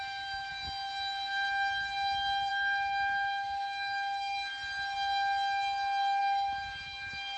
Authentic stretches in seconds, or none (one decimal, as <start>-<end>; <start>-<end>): 0.5-2.5; 4.5-6.2